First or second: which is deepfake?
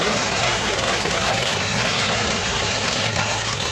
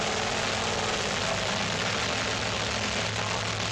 first